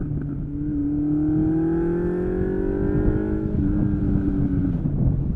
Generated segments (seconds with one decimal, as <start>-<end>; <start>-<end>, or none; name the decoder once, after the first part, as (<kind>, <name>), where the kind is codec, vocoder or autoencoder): none